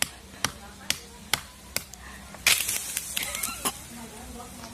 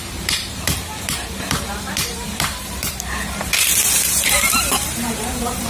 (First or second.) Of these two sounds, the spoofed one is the second